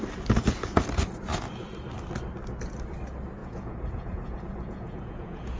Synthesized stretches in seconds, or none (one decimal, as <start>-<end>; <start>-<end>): 3.4-5.6